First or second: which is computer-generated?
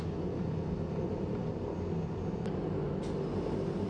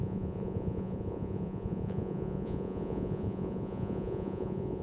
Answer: second